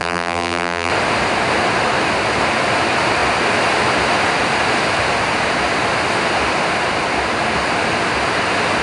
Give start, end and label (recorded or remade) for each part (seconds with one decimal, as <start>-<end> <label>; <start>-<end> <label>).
0.0-0.9 remade; 0.9-8.8 recorded